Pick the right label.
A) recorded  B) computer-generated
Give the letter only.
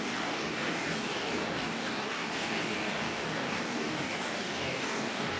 B